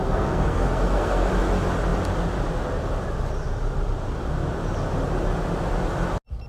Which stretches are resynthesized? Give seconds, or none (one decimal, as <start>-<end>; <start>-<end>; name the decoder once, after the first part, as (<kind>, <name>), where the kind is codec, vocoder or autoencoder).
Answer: 0.0-1.3 (codec, SNAC)